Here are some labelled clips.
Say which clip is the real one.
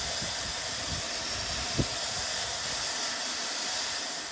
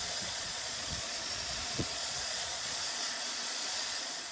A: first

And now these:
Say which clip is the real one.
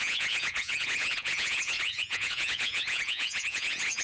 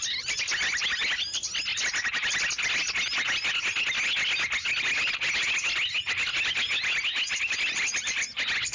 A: second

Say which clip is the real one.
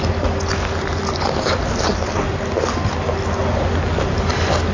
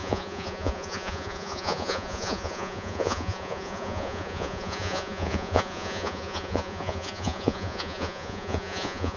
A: first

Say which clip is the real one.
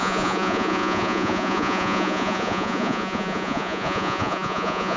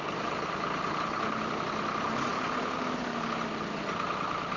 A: second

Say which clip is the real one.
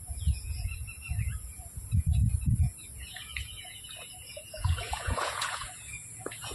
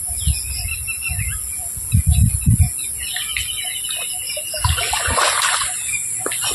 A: second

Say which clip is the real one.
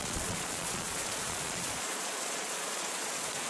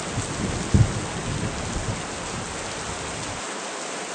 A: second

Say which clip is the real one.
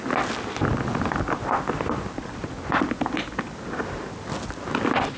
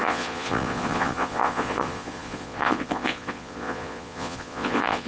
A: first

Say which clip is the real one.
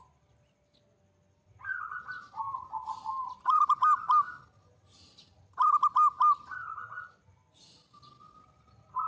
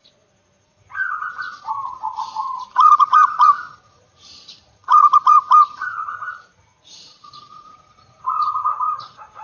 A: first